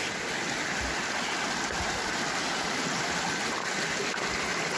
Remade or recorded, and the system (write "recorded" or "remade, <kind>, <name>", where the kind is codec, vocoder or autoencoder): recorded